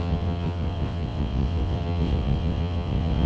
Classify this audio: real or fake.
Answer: fake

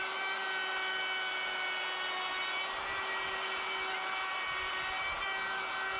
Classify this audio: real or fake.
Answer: real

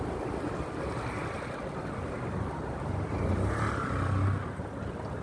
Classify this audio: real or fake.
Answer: real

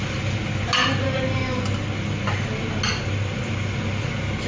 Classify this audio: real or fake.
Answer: real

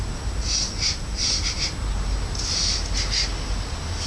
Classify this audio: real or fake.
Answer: real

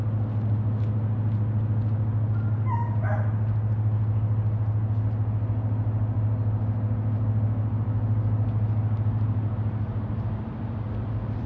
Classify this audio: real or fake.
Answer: real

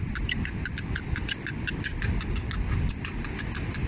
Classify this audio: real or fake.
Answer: real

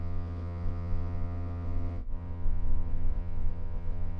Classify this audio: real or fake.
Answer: fake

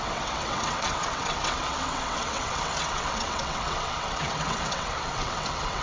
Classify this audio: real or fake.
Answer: fake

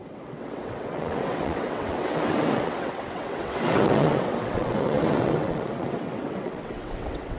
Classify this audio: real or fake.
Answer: fake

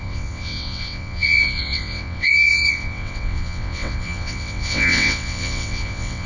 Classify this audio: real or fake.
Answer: fake